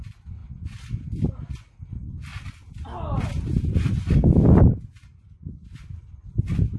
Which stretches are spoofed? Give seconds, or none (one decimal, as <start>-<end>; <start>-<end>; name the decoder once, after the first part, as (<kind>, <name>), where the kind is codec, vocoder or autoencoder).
none